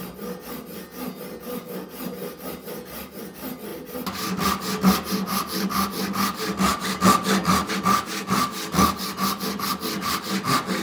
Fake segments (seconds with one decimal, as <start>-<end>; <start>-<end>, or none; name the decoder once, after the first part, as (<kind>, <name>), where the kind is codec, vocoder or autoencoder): none